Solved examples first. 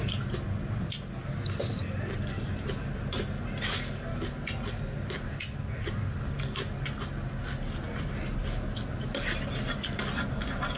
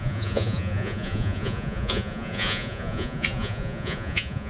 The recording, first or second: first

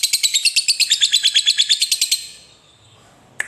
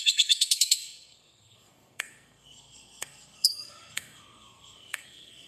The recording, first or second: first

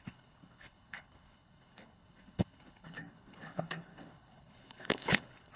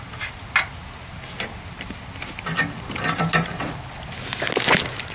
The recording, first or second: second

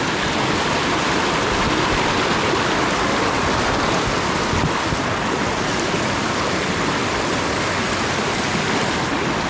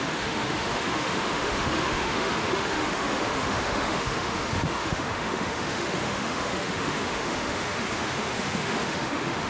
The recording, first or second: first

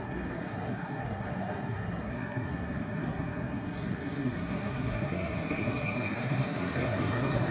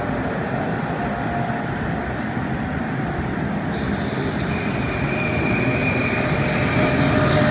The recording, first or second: second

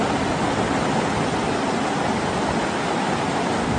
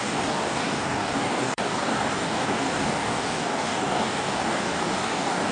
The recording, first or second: first